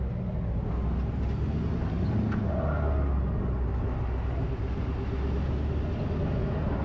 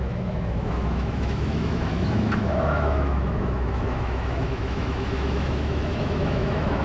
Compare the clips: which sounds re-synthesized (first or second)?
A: second